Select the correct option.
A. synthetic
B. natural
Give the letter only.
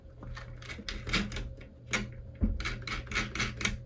B